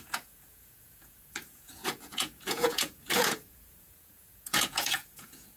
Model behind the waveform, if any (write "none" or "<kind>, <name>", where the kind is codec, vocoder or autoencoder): vocoder, Vocos